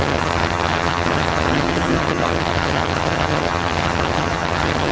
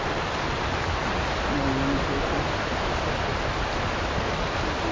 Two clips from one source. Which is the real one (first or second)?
second